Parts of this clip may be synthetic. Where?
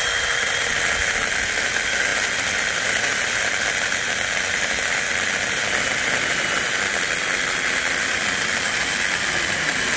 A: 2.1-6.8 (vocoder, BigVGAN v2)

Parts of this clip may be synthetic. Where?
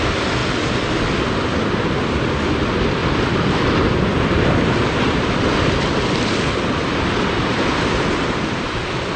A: 0.4-0.9 (vocoder, BigVGAN v2); 3.0-7.4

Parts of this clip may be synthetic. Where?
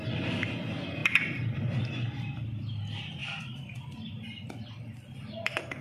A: 1.0-1.9 (vocoder, BigVGAN v2); 3.2-5.8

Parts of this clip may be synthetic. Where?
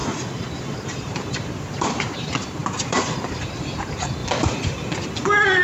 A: 0.6-4.2 (vocoder, BigVGAN v2)